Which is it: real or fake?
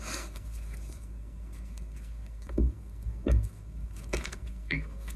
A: fake